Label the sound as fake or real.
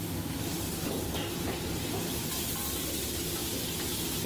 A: real